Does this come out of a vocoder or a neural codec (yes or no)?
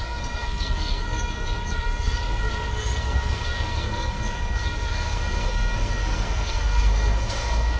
yes